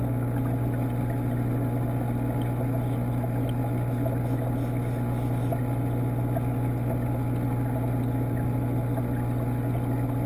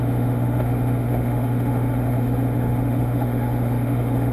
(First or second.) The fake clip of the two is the second